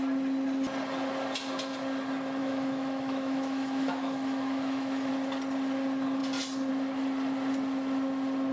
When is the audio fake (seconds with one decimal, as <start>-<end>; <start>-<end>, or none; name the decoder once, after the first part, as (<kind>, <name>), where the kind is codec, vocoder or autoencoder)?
2.4-5.1 (autoencoder, DAC-VAE)